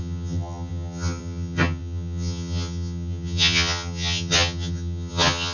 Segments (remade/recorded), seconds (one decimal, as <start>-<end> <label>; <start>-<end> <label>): 0.0-5.5 remade